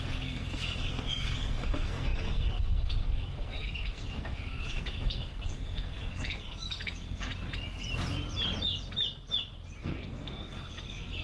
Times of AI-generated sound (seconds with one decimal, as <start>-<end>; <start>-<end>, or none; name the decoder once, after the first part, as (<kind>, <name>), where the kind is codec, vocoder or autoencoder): 0.0-7.3 (codec, SNAC); 9.8-11.2